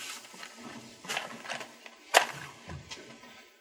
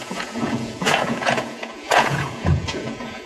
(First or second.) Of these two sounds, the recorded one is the first